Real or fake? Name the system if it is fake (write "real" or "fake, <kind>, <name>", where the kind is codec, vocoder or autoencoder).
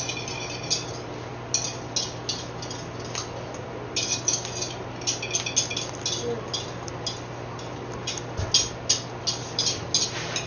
real